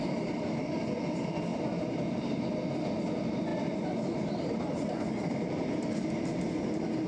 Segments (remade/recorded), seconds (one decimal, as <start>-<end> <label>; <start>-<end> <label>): 0.0-1.5 recorded; 1.5-2.5 remade; 2.5-3.5 recorded; 3.5-5.9 remade; 5.9-7.1 recorded